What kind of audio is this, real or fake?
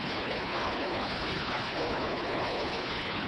fake